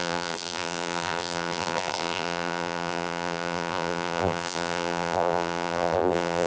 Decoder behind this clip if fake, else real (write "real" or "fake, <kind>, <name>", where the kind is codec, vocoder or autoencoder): fake, vocoder, BigVGAN v2